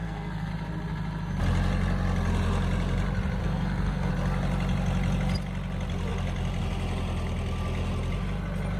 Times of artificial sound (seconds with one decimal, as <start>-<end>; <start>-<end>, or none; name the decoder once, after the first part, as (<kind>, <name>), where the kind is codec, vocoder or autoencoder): 0.0-0.5 (codec, SNAC); 3.4-4.1